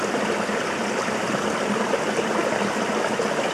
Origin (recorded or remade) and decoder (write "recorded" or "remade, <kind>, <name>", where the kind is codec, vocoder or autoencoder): remade, vocoder, BigVGAN v2